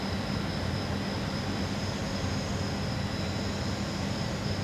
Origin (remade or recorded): recorded